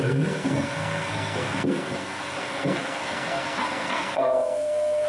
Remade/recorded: remade